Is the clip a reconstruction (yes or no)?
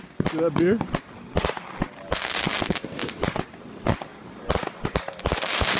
no